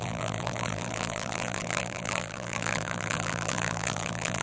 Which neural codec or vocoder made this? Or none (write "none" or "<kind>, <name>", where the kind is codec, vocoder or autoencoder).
vocoder, BigVGAN v2